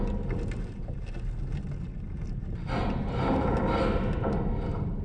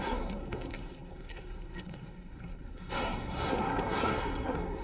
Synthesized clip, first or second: second